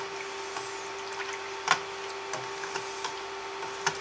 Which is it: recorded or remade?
recorded